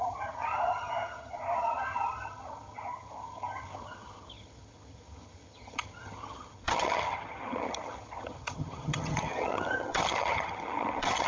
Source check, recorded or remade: remade